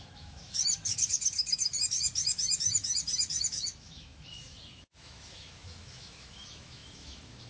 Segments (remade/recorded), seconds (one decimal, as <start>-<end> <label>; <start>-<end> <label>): 0.0-7.5 remade